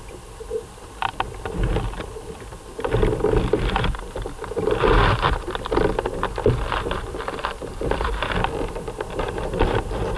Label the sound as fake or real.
fake